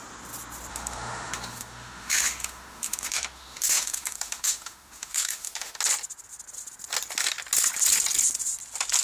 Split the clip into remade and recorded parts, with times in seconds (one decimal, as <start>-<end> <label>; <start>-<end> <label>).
0.0-0.7 recorded; 0.7-5.8 remade; 5.8-9.0 recorded